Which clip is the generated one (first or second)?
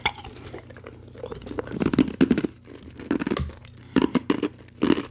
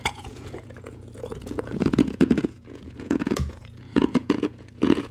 second